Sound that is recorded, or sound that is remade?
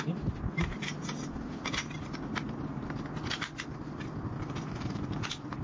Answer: recorded